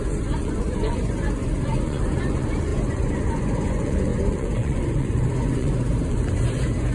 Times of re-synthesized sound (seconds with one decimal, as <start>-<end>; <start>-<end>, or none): 0.0-6.9